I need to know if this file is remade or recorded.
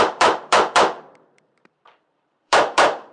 remade